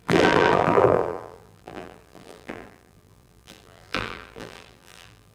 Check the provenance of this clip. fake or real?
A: fake